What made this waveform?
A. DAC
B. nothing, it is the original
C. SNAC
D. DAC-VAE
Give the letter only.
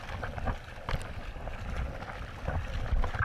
B